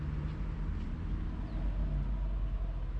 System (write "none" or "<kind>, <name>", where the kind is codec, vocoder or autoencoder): none